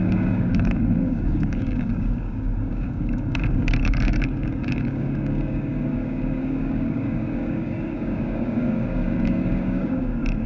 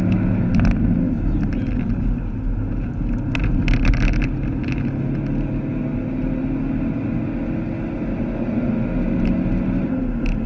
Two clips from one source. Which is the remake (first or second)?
first